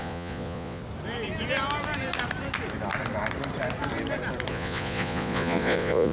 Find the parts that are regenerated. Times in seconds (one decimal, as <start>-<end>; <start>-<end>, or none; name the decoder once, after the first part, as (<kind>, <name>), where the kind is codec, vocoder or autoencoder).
0.0-0.8 (vocoder, Vocos); 4.5-6.1